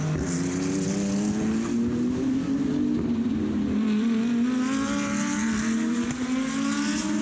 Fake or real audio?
real